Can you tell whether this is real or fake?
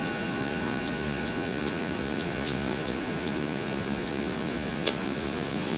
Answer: fake